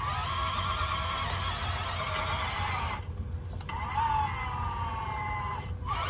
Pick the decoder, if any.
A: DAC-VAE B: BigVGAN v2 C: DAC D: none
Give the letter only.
D